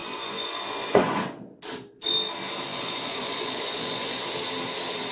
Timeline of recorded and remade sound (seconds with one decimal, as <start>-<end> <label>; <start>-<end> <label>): 0.0-1.2 remade; 1.2-2.7 recorded; 2.7-4.2 remade; 4.2-5.1 recorded